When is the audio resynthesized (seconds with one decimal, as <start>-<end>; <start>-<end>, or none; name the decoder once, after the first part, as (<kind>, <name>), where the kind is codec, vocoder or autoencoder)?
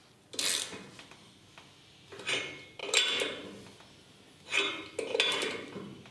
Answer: none